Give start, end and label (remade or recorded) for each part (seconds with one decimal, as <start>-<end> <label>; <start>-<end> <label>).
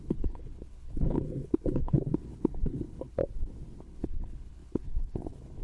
0.0-3.2 remade; 3.2-3.8 recorded; 3.8-5.6 remade